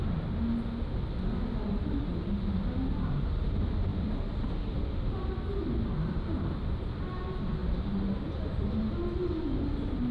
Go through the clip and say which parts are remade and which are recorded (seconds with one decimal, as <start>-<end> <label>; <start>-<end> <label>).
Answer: 0.0-10.1 recorded